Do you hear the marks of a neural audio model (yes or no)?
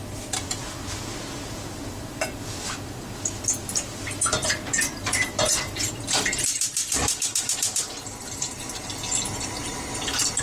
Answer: yes